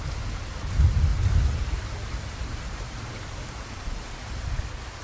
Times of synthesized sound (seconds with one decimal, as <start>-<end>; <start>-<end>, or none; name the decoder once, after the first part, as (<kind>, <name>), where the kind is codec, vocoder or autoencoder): 1.1-4.1 (vocoder, BigVGAN v2)